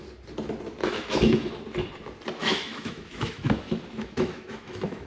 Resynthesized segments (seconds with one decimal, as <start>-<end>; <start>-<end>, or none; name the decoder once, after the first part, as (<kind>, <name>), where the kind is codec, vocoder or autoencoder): 0.8-1.5 (autoencoder, DAC-VAE); 2.4-5.1